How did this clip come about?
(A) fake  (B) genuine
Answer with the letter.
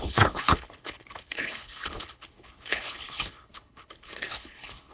A